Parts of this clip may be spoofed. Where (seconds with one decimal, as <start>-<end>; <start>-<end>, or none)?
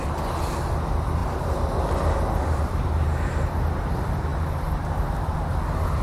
1.2-3.9